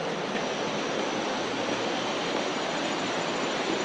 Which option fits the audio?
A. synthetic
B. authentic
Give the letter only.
B